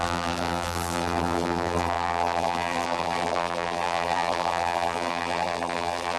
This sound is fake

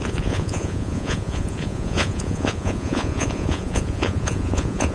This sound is fake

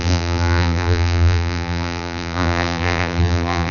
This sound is fake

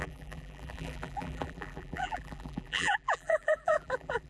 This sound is fake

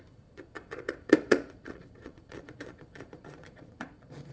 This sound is fake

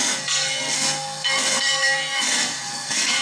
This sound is fake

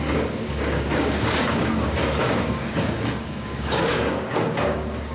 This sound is fake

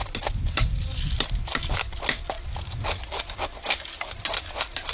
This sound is real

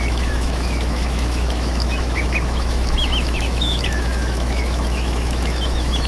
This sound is fake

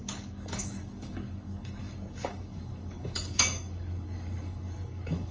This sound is fake